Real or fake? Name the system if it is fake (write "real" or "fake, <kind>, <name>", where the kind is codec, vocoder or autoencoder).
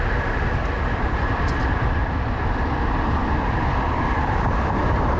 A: real